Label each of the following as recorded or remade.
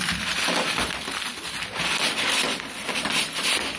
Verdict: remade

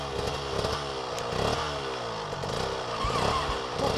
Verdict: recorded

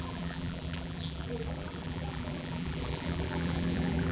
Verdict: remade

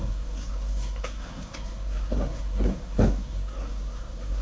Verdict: remade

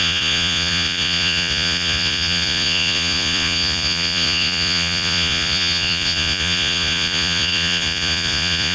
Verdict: remade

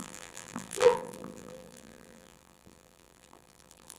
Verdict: remade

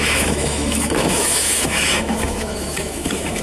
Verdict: remade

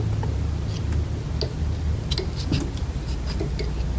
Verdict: recorded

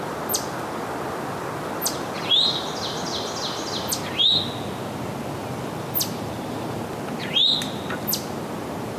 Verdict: recorded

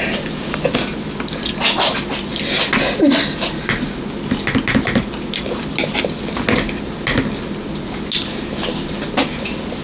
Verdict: recorded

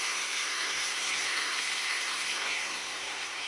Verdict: remade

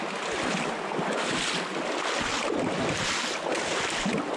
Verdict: recorded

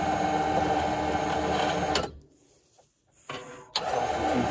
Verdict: recorded